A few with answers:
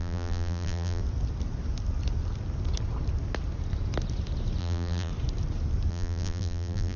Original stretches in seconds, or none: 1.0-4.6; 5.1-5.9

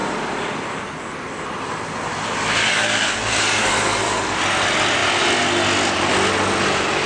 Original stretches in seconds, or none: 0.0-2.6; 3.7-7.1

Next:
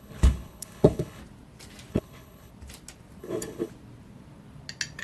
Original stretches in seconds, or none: 1.2-1.9; 2.5-3.2; 3.7-5.0

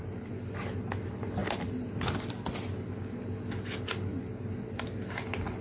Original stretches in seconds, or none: 0.0-5.6

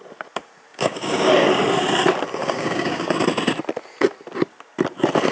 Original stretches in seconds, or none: 0.0-0.7; 1.3-2.4; 3.1-5.3

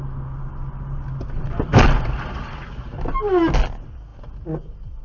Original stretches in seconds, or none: 0.0-5.0

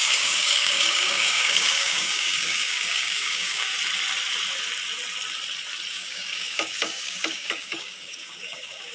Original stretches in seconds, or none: 3.7-5.9

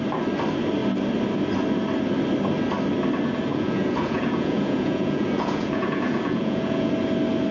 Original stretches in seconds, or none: 0.0-3.5; 6.9-7.5